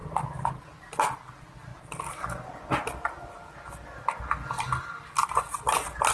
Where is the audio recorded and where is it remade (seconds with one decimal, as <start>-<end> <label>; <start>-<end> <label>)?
0.0-0.8 recorded; 0.8-1.7 remade; 1.7-5.0 recorded; 5.0-6.1 remade

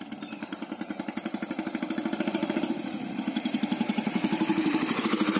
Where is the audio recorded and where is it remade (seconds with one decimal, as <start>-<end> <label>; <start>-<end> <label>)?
0.0-5.4 remade

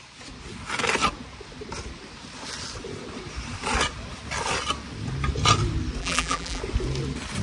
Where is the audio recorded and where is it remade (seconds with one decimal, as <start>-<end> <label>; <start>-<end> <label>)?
0.0-6.0 recorded; 6.0-6.6 remade; 6.6-7.4 recorded

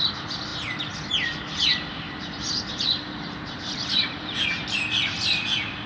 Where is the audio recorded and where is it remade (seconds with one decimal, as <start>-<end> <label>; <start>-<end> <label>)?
0.0-1.7 recorded; 1.7-5.2 remade; 5.2-5.9 recorded

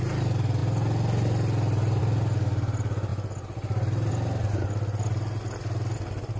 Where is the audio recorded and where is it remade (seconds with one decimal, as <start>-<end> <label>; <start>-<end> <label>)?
0.0-6.4 recorded